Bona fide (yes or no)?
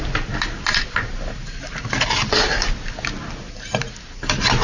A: yes